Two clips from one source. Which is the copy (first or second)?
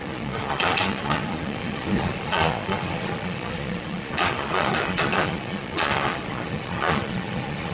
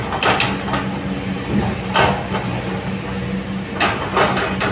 first